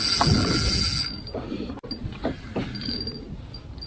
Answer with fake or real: real